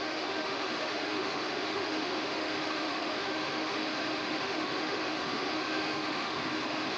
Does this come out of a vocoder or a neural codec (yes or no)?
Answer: yes